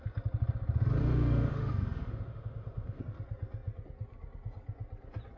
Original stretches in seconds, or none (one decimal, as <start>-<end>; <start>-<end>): 0.0-1.0; 3.0-5.4